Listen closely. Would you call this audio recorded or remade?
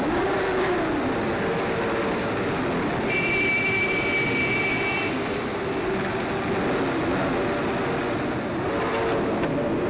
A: recorded